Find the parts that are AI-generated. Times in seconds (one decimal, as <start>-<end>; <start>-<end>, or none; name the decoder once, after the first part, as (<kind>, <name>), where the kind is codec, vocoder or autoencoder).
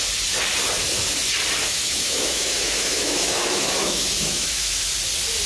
1.6-4.9 (autoencoder, DAC-VAE)